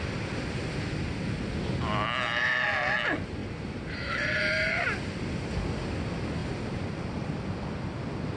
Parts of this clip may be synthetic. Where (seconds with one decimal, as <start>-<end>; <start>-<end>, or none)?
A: 3.4-5.0